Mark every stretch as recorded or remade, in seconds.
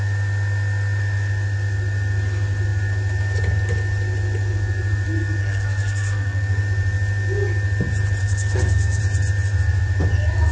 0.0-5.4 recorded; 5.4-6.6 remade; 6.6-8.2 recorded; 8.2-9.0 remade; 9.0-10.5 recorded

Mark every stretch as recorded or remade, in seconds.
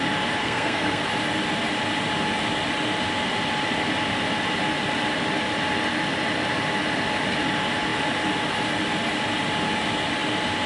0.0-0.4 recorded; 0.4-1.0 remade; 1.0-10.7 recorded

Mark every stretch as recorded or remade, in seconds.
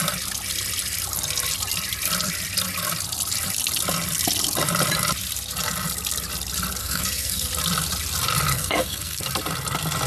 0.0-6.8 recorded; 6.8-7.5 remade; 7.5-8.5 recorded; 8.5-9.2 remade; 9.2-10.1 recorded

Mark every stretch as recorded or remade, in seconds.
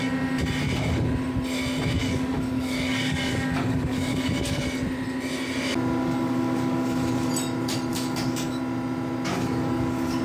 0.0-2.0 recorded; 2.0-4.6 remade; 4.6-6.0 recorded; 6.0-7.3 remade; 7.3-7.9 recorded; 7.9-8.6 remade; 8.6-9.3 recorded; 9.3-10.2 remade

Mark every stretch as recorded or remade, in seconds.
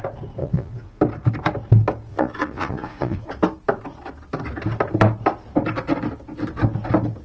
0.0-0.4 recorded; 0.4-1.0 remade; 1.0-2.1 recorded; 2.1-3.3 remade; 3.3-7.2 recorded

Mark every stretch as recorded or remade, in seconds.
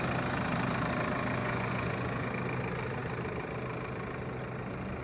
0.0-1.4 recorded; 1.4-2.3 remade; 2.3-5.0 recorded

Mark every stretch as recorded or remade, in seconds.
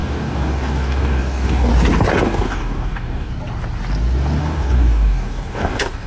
0.0-1.7 remade; 1.7-2.2 recorded; 2.2-3.3 remade; 3.3-4.4 recorded; 4.4-6.1 remade